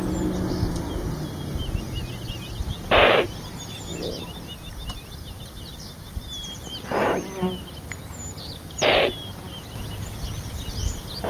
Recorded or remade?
recorded